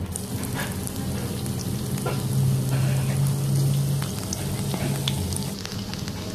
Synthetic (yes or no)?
no